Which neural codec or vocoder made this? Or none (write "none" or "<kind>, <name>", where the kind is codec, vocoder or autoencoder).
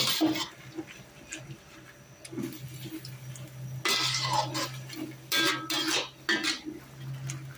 none